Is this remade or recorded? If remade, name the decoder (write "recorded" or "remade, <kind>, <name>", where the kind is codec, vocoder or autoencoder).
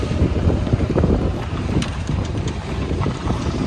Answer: remade, vocoder, BigVGAN v2